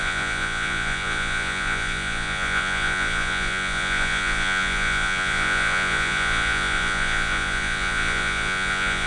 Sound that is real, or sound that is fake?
fake